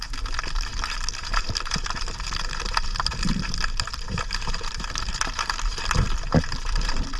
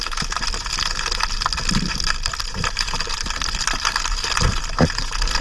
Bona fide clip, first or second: second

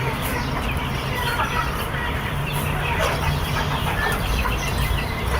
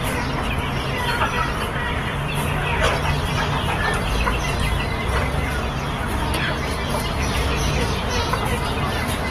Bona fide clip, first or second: second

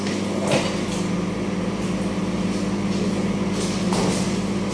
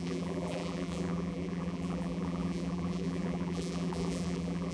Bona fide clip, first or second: first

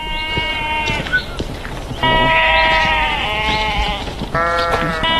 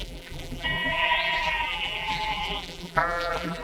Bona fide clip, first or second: first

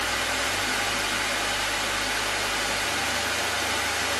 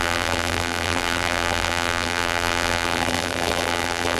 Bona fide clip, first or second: first